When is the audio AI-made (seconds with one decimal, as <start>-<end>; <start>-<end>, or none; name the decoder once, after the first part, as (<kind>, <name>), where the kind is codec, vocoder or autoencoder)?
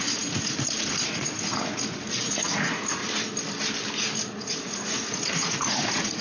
0.0-3.0 (vocoder, Vocos); 4.4-6.2